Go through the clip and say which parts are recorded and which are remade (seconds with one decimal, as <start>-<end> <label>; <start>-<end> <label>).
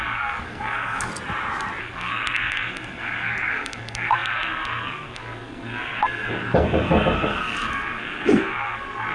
0.0-1.1 remade; 1.1-1.8 recorded; 1.8-9.1 remade